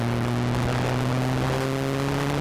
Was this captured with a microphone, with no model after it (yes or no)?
yes